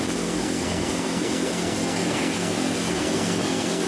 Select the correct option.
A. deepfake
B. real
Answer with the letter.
A